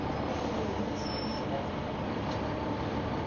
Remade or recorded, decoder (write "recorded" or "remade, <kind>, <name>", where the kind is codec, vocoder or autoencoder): recorded